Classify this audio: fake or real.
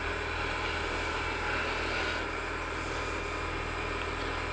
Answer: real